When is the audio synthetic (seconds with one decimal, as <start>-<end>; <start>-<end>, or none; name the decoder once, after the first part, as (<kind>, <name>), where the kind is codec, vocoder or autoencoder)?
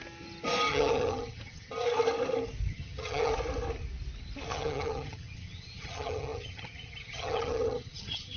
0.7-1.7 (vocoder, HiFi-GAN); 2.7-3.3; 4.5-8.4